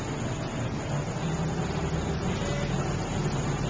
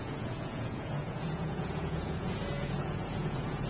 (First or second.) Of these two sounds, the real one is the first